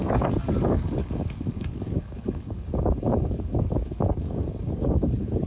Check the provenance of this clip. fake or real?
fake